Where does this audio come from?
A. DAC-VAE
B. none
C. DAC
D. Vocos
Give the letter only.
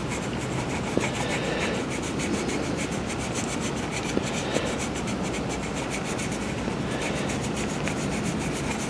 B